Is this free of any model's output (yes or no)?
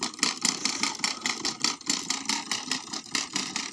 yes